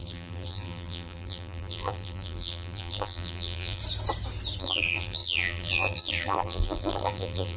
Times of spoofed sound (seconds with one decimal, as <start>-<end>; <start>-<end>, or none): 0.0-3.8; 4.6-7.6